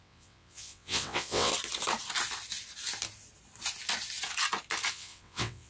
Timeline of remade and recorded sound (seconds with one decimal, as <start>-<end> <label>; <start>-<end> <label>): 0.0-1.5 remade; 1.5-4.9 recorded; 4.9-5.7 remade